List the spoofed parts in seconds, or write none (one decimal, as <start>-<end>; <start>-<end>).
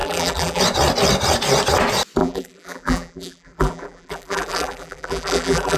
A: 0.0-0.6; 2.2-5.8